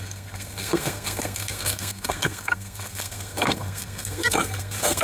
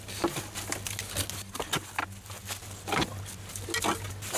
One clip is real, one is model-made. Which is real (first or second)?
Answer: second